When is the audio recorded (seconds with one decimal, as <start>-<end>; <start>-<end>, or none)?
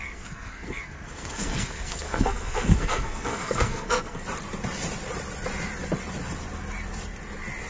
4.2-7.7